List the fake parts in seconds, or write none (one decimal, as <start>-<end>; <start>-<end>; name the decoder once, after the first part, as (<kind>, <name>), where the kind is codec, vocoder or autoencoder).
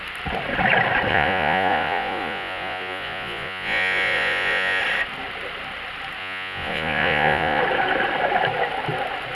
1.1-4.8 (vocoder, Vocos); 6.2-7.6